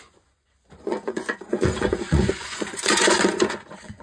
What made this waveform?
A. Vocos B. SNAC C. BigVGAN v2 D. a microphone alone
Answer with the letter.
A